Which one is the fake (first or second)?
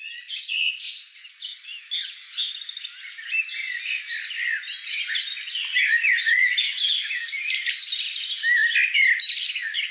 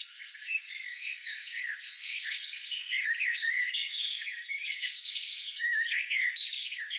second